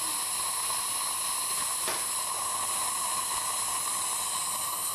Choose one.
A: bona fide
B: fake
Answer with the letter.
A